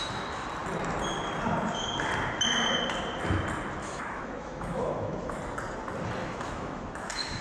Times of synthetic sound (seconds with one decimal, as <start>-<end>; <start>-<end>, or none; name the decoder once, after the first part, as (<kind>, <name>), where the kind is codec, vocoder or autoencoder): 3.8-5.4 (autoencoder, DAC-VAE); 6.2-7.4